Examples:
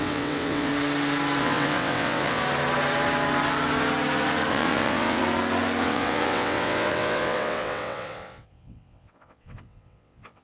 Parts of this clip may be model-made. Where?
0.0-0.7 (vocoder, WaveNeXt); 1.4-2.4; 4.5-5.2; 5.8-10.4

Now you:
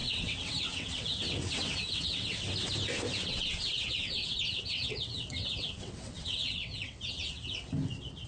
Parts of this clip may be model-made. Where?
0.0-2.4 (vocoder, WaveNeXt); 3.2-7.7

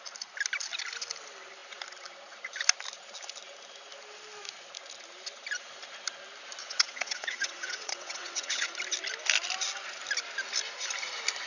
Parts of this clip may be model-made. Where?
6.6-8.7 (vocoder, WaveNeXt)

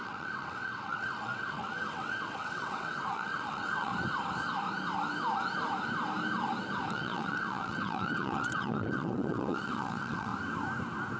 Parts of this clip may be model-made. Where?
0.0-3.9 (vocoder, WaveNeXt); 6.9-10.3

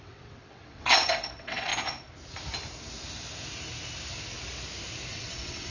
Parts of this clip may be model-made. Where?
0.0-1.7 (vocoder, WaveNeXt); 5.1-5.7